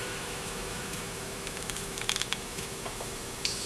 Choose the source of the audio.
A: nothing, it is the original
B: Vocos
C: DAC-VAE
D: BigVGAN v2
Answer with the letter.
C